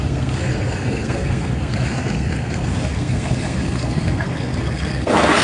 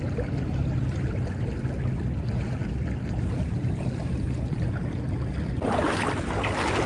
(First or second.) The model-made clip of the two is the first